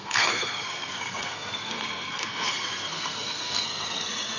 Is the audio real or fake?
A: fake